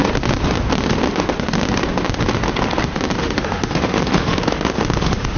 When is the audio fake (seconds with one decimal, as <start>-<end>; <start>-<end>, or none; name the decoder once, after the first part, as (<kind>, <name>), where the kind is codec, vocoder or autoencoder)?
3.2-5.4 (autoencoder, DAC-VAE)